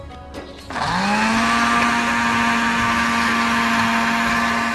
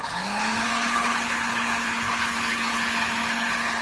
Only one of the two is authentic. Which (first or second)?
first